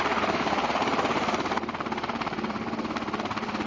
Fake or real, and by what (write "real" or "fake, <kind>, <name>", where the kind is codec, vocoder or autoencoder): real